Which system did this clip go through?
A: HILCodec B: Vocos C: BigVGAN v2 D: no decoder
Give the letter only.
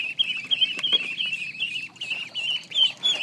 D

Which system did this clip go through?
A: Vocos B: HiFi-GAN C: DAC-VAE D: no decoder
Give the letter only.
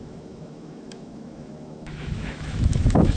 C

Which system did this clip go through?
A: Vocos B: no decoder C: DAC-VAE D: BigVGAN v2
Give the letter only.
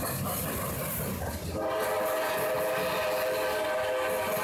B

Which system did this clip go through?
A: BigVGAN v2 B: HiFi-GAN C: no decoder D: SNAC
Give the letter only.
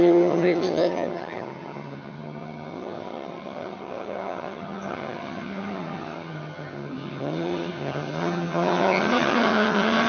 B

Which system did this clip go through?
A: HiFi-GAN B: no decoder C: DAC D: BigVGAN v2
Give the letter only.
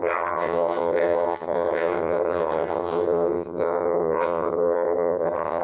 A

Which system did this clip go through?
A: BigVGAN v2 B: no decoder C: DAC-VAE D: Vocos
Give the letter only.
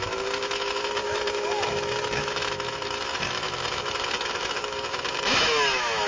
C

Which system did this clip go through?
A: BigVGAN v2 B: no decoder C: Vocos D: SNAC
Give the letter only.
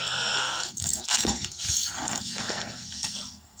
D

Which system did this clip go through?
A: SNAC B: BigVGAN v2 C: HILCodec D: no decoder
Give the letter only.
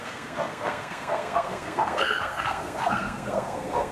A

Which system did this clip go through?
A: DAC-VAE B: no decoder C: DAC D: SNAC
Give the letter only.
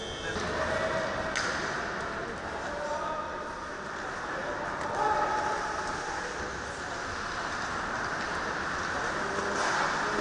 B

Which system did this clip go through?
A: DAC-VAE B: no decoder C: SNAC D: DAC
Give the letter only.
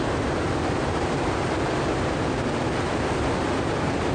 B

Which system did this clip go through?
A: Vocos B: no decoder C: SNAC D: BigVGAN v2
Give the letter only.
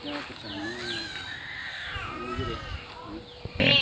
B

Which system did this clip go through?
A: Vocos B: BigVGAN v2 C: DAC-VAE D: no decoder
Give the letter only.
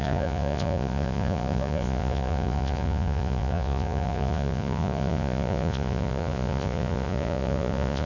A